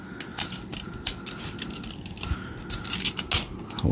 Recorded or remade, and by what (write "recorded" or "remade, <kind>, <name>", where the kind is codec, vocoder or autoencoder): recorded